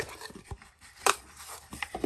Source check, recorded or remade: remade